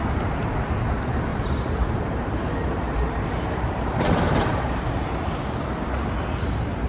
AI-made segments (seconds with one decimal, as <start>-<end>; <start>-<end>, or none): 1.3-5.4